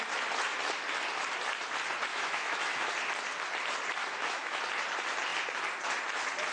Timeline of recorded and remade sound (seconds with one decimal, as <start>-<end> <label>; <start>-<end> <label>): 0.0-2.1 recorded; 2.1-2.9 remade; 2.9-4.0 recorded; 4.0-4.6 remade; 4.6-6.5 recorded